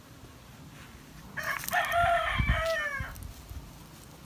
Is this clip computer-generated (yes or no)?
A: no